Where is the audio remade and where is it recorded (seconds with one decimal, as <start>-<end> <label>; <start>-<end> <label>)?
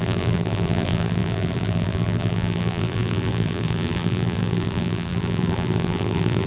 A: 0.0-6.5 remade